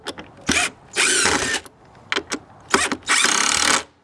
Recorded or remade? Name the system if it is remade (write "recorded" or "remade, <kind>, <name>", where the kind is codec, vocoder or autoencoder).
recorded